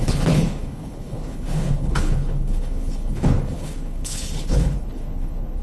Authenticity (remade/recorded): remade